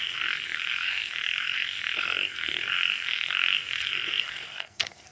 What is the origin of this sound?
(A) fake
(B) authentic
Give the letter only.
A